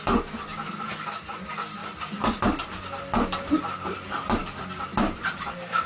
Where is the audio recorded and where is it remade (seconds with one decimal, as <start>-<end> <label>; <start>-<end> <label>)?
0.0-5.9 recorded